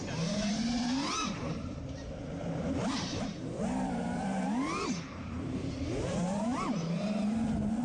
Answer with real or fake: fake